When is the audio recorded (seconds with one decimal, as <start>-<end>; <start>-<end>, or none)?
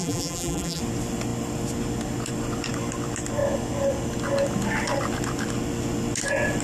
0.8-6.6